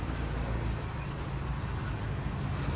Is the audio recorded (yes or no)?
yes